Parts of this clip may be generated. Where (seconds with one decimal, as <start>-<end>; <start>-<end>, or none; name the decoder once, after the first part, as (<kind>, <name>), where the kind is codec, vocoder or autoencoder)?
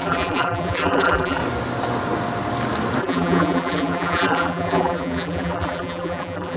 0.0-1.4 (vocoder, BigVGAN v2); 3.0-6.6